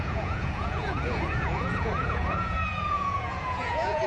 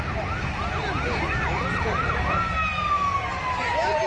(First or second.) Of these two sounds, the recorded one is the second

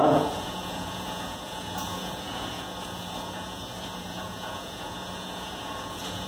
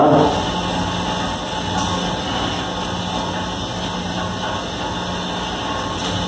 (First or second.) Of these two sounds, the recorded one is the second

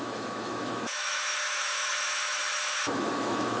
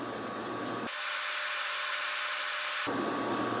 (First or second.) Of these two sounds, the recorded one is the second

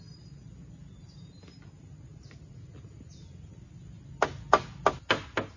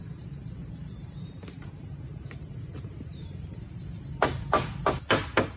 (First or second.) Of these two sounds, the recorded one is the first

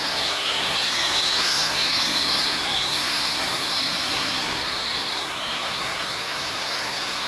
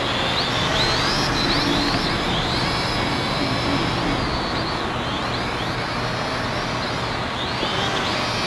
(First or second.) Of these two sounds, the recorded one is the second